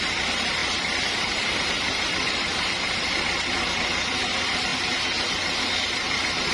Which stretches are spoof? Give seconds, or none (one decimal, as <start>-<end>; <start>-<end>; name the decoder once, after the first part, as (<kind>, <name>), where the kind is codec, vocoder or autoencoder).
0.0-4.7 (vocoder, BigVGAN v2); 5.3-6.5